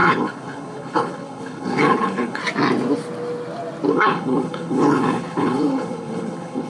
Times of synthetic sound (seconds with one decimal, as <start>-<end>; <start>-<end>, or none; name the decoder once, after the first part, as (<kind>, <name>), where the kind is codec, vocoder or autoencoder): 0.0-2.4 (codec, HILCodec); 3.9-6.7